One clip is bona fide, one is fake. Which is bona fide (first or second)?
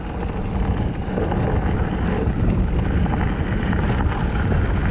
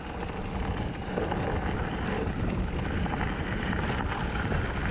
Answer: first